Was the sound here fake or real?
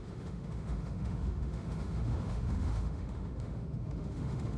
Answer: fake